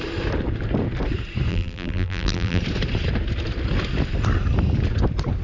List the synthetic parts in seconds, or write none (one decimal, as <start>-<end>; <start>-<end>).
1.5-2.6